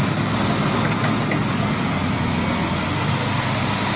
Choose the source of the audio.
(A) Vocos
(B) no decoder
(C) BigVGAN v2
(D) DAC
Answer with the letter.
B